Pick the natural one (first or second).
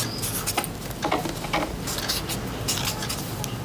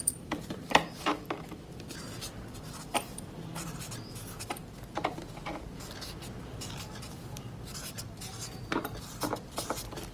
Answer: first